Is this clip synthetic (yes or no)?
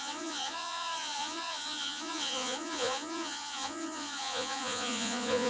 yes